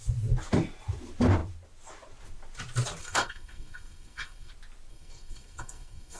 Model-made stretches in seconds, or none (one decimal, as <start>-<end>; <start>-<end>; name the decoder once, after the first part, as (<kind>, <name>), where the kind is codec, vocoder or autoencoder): 3.0-4.5 (codec, SNAC); 4.9-6.2

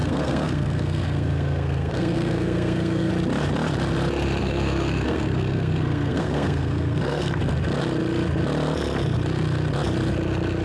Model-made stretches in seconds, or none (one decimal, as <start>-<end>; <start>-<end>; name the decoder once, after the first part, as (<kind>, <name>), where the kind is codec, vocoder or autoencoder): 0.0-3.1 (codec, SNAC); 4.4-7.4